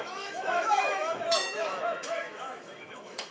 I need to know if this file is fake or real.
fake